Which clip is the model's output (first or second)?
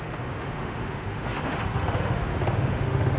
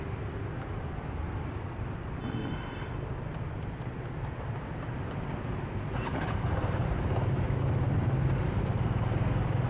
first